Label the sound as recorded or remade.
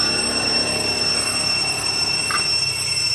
recorded